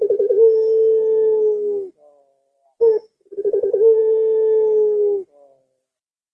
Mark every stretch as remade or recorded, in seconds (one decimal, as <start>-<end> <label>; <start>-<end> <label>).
0.0-6.3 recorded